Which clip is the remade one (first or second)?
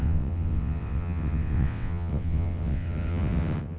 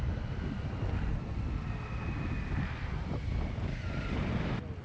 first